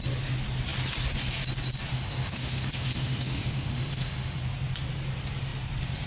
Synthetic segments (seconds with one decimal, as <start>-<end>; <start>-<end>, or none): 1.9-4.4